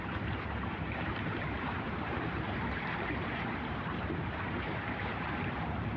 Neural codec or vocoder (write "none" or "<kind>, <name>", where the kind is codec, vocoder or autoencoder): vocoder, BigVGAN v2